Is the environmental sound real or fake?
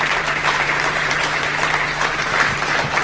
fake